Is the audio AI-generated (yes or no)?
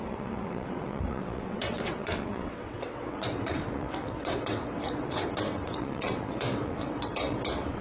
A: yes